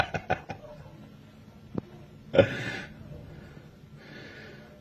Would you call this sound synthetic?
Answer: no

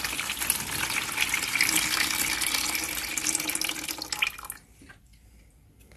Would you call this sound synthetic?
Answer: no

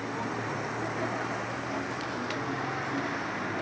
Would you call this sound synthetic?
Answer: no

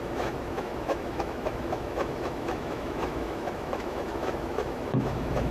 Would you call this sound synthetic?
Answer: yes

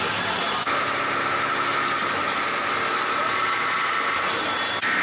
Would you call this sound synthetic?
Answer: no